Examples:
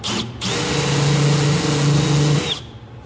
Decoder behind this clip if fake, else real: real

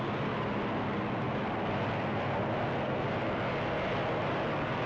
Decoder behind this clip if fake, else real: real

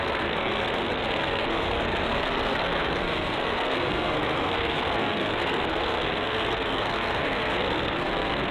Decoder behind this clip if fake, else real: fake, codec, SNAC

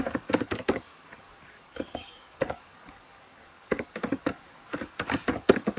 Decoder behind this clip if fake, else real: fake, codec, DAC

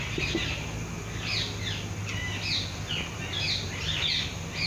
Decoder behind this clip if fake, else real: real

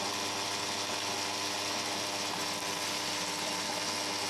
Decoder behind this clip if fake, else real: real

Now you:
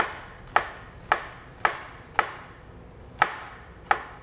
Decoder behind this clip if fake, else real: real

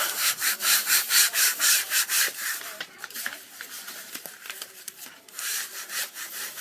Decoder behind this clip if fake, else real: fake, vocoder, BigVGAN v2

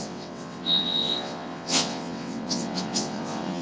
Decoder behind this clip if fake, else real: fake, vocoder, WaveNeXt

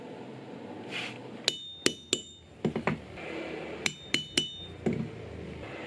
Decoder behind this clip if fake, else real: real